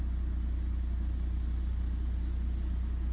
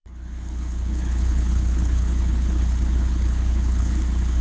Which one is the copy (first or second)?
second